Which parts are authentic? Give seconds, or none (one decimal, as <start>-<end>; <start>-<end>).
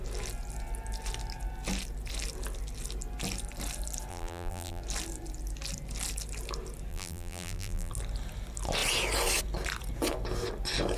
0.0-4.1; 4.8-6.9; 7.9-11.0